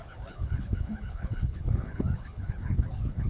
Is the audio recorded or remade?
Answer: remade